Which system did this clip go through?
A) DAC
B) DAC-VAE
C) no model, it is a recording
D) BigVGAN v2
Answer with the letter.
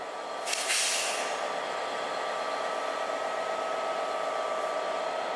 C